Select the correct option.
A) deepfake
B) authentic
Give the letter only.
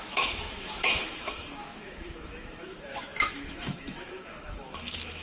A